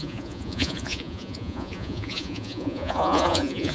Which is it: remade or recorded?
remade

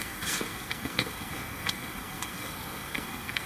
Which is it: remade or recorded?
remade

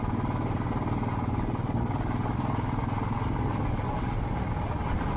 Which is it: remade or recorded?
recorded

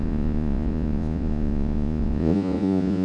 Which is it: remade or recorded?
remade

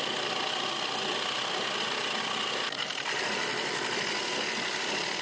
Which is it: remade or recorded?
recorded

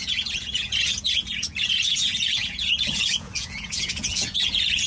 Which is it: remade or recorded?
remade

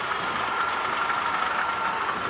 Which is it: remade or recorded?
recorded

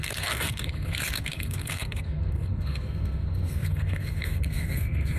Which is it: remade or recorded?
remade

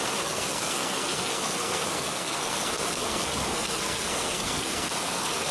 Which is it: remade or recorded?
remade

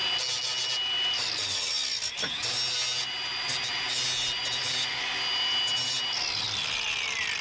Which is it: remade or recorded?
recorded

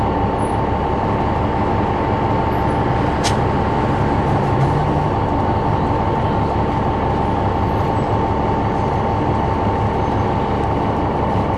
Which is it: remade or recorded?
recorded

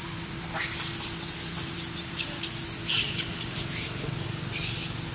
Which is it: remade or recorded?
recorded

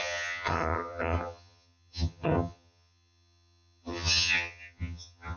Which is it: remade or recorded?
remade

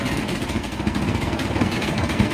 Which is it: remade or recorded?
remade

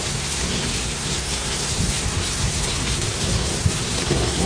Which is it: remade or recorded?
remade